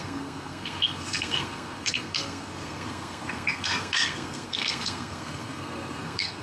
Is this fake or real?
fake